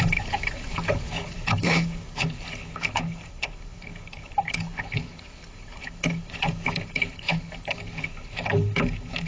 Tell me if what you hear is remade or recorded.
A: remade